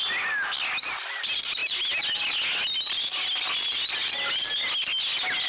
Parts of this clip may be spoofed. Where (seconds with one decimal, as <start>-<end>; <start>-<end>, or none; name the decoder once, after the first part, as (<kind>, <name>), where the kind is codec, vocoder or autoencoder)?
none